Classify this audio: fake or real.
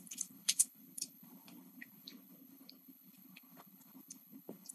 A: fake